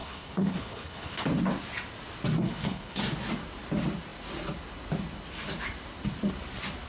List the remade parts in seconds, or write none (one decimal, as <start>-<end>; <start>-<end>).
0.0-1.2; 2.4-3.0